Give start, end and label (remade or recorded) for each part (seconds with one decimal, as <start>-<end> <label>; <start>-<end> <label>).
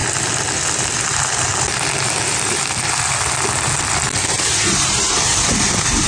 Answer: 0.0-6.1 recorded